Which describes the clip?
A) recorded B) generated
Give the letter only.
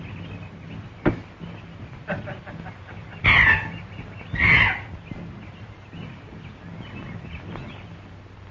A